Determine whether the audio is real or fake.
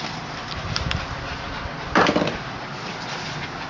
fake